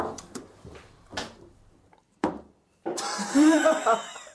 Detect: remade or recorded remade